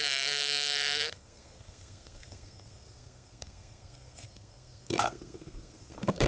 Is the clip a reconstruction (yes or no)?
yes